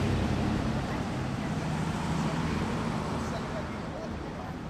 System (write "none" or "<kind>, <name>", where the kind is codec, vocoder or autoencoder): vocoder, BigVGAN v2